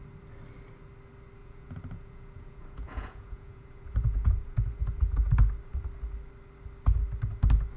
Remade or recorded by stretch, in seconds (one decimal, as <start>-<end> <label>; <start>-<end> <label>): 0.0-1.4 recorded; 1.4-4.8 remade; 4.8-7.8 recorded